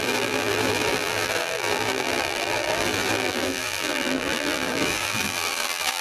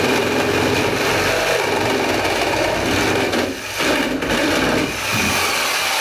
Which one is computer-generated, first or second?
first